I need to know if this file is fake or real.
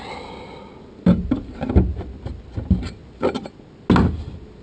real